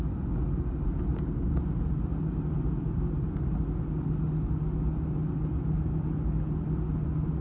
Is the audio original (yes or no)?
yes